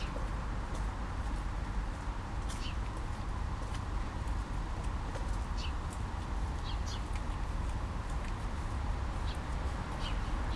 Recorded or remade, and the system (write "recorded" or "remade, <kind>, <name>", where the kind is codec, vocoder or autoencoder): recorded